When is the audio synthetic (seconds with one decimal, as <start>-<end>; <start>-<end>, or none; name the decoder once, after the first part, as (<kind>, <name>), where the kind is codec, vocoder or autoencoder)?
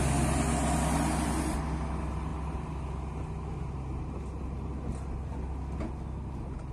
none